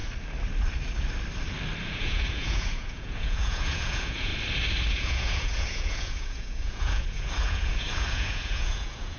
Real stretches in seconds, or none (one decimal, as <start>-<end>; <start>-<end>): 0.0-1.8; 4.3-4.9